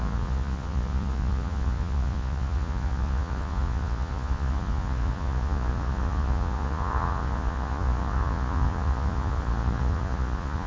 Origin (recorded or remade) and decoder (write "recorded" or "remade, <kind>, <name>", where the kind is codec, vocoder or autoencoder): remade, vocoder, Vocos